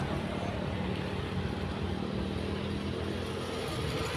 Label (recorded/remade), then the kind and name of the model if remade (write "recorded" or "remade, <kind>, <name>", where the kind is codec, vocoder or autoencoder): recorded